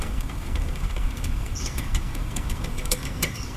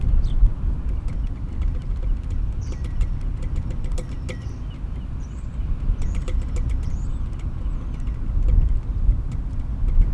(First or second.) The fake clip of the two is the first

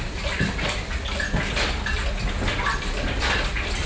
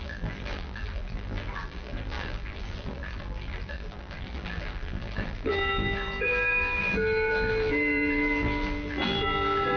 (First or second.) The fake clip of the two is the second